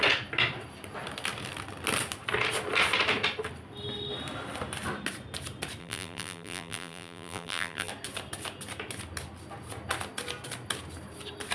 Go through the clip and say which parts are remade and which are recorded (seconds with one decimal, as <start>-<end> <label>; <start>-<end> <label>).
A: 0.0-5.8 recorded; 5.8-7.9 remade; 7.9-11.5 recorded

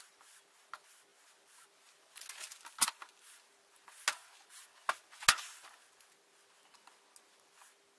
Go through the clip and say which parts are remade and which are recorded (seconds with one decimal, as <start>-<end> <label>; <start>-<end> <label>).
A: 0.0-8.0 recorded

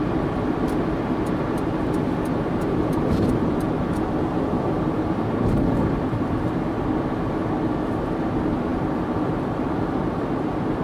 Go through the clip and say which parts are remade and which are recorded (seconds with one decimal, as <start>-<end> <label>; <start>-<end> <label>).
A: 0.0-7.4 remade; 7.4-7.9 recorded; 7.9-10.8 remade

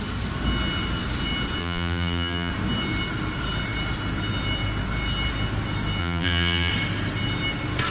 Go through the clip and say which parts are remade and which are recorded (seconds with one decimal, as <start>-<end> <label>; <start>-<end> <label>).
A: 0.0-1.6 recorded; 1.6-2.5 remade; 2.5-6.0 recorded; 6.0-6.7 remade; 6.7-7.9 recorded

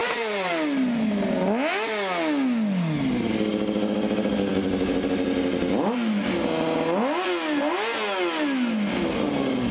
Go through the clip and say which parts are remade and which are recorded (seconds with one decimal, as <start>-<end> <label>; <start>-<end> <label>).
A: 0.0-0.5 remade; 0.5-9.7 recorded

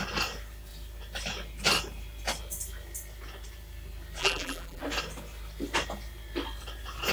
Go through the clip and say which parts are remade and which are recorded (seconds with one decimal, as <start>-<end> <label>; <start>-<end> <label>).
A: 0.0-4.2 recorded; 4.2-4.8 remade; 4.8-7.1 recorded

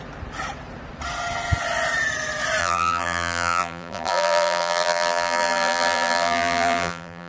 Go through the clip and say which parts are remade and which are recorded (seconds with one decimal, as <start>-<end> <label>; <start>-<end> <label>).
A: 0.0-2.6 recorded; 2.6-7.3 remade

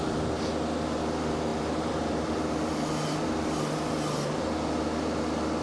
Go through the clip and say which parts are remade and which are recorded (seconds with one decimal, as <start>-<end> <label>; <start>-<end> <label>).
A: 0.0-1.5 recorded; 1.5-2.9 remade; 2.9-5.6 recorded